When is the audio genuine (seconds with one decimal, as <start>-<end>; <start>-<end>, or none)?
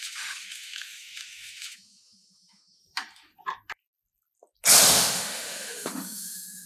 2.8-4.9